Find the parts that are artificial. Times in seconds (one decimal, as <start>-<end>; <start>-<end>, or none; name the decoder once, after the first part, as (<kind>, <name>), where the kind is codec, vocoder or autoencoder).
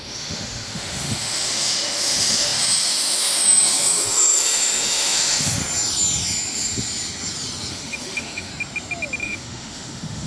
0.0-5.6 (autoencoder, DAC-VAE); 7.7-8.5; 9.2-10.3